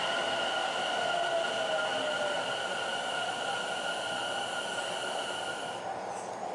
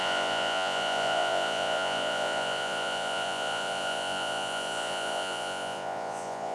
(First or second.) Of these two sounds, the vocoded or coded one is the second